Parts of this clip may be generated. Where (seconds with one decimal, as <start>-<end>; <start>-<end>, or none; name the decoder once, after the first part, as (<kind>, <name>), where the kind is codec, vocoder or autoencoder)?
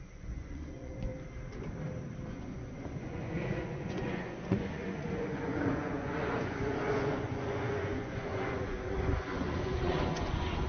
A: 0.0-1.1 (vocoder, Vocos); 2.3-10.7